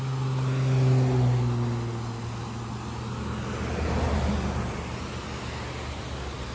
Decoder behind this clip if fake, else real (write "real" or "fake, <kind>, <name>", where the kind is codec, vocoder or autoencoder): real